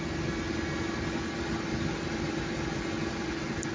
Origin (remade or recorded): recorded